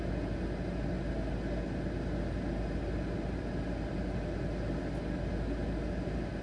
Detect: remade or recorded recorded